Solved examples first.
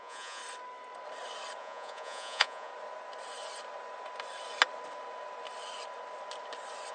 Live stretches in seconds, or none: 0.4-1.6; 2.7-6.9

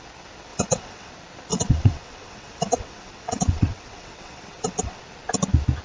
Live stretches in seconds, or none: 0.0-0.5; 1.1-1.5; 5.0-5.8

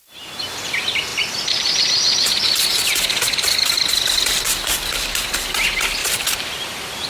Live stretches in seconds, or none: 0.0-1.1; 2.3-6.0

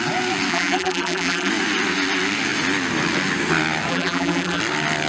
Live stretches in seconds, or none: 0.0-0.5; 1.5-3.9; 4.6-5.1

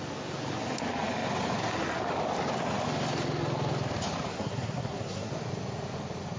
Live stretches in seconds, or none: 0.0-4.3; 5.3-6.4

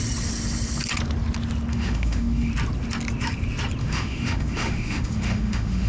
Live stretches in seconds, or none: 0.0-1.7; 2.5-3.8

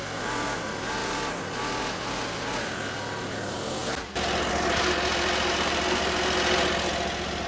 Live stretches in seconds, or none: 0.0-7.5